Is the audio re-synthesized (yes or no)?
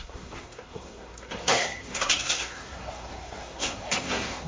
yes